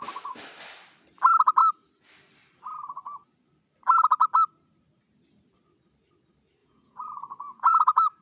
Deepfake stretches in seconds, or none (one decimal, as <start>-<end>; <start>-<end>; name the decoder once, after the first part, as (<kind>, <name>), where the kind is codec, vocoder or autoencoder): 6.6-8.2 (vocoder, Vocos)